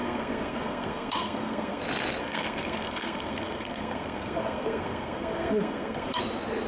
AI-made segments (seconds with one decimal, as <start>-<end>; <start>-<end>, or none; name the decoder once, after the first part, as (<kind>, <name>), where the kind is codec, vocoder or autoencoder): 0.0-1.8 (codec, SNAC); 2.2-6.2